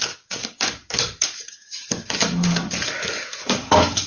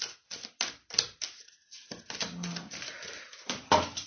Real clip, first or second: second